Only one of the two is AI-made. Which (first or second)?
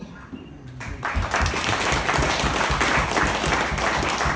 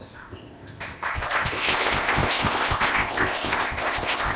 second